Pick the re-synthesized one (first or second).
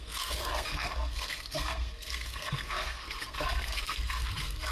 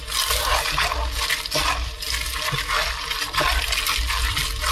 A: first